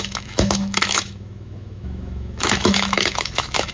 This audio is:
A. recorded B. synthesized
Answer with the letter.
B